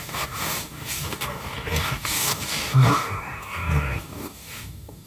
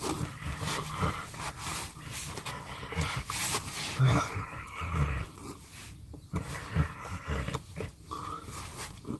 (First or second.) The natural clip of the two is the second